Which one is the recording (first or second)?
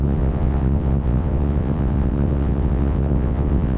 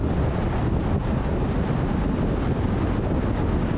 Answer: second